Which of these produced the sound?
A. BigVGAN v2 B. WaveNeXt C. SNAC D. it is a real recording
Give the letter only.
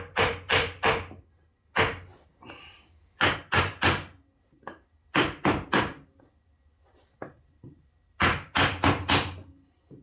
D